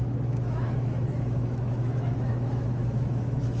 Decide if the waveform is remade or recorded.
remade